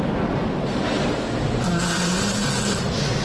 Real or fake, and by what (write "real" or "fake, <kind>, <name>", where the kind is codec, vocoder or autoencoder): real